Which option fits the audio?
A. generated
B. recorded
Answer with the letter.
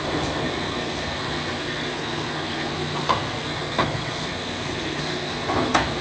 A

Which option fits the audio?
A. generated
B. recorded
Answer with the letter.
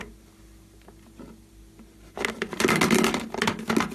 B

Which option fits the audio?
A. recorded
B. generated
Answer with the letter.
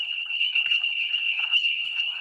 B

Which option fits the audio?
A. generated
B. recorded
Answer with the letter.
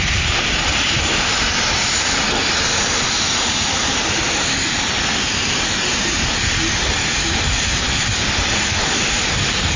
B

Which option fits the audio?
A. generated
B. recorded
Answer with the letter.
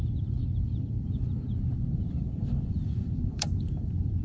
A